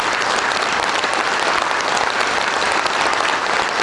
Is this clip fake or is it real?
real